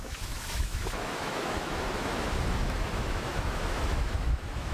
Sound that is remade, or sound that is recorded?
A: remade